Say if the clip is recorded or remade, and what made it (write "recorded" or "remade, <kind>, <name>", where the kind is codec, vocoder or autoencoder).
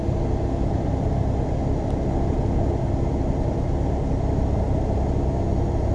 recorded